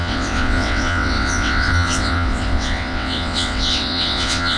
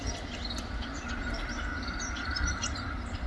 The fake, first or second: first